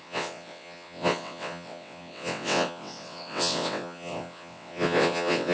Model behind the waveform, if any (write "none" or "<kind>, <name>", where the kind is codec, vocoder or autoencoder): vocoder, WaveNeXt